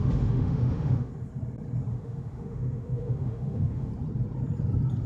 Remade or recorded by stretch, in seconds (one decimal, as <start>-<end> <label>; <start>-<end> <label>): 0.0-1.1 remade; 1.1-1.9 recorded; 1.9-3.9 remade; 3.9-5.1 recorded